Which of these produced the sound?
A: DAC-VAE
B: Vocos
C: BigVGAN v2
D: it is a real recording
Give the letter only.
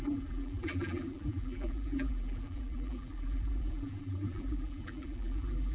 C